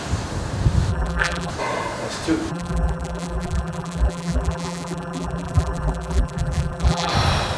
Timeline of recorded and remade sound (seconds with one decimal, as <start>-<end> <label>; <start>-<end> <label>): 0.0-0.9 recorded; 0.9-1.5 remade; 1.5-2.5 recorded; 2.5-7.1 remade; 7.1-7.6 recorded